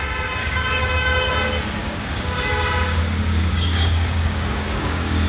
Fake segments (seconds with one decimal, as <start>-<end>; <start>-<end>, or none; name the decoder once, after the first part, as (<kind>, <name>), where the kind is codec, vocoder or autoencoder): 0.4-1.3 (codec, DAC); 1.8-5.3